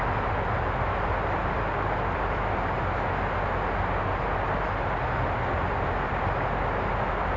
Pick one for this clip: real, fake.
real